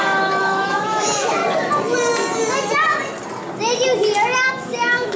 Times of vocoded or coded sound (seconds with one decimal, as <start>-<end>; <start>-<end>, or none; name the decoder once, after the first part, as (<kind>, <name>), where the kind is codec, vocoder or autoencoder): 0.0-1.4 (autoencoder, DAC-VAE); 4.5-5.2